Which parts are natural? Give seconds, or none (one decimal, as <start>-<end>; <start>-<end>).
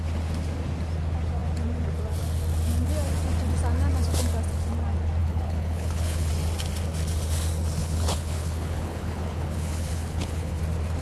0.0-5.2; 6.3-7.8; 10.6-11.0